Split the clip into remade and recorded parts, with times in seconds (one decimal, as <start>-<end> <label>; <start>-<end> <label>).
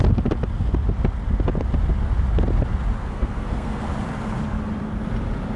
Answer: 0.0-3.0 recorded; 3.0-3.9 remade; 3.9-5.6 recorded